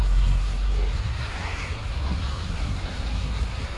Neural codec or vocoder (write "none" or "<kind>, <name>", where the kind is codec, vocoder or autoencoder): codec, SNAC